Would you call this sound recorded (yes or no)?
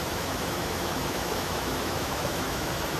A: no